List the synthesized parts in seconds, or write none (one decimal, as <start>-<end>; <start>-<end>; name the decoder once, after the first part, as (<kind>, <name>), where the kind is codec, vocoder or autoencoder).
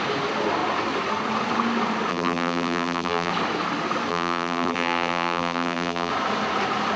2.1-3.3 (vocoder, BigVGAN v2); 4.1-6.1